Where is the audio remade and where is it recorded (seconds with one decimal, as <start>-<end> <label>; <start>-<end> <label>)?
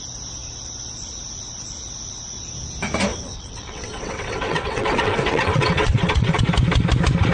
0.0-3.1 recorded; 3.1-6.4 remade; 6.4-7.3 recorded